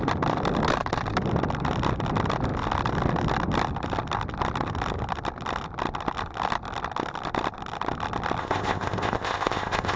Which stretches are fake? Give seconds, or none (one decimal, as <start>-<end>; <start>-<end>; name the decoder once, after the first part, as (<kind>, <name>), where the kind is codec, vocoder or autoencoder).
8.4-10.0 (codec, ZipCodec)